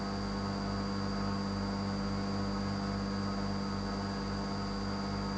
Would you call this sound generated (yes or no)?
no